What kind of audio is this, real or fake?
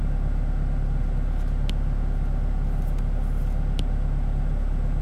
real